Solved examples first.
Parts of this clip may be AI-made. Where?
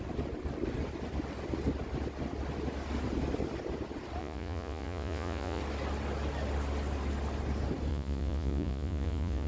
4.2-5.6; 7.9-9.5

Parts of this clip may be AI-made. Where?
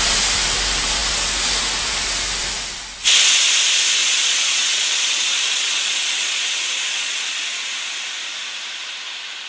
4.0-7.4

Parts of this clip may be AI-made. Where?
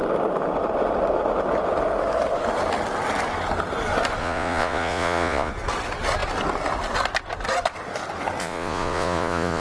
4.2-5.5; 8.4-9.6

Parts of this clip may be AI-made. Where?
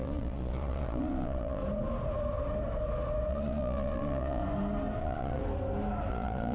0.0-1.6; 3.3-4.4; 5.0-5.4; 6.1-6.5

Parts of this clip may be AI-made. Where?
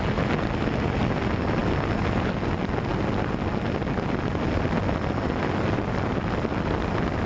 none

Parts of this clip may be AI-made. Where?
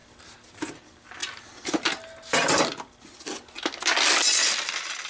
none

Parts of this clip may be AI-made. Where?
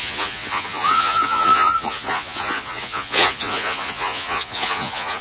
0.0-5.2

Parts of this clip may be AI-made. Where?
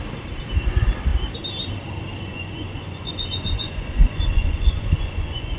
2.3-5.6